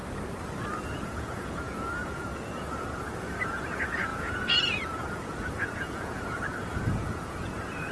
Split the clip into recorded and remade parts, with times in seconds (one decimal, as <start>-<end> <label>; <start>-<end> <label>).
0.0-0.9 recorded; 0.9-7.9 remade